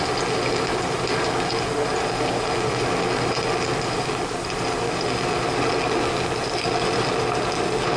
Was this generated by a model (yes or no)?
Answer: no